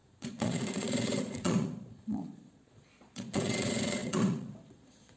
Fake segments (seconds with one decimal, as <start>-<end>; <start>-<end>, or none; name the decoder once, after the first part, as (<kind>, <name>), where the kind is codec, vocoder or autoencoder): 0.0-5.2 (vocoder, Vocos)